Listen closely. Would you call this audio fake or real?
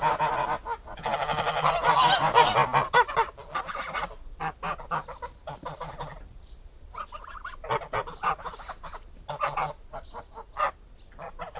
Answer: real